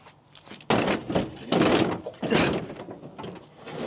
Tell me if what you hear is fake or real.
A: real